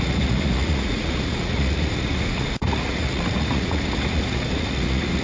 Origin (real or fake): fake